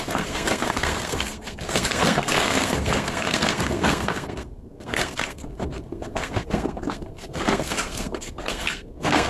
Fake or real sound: fake